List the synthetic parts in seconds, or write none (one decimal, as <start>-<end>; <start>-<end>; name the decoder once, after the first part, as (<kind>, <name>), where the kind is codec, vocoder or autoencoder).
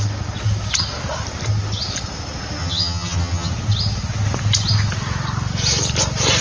2.6-3.5 (vocoder, HiFi-GAN)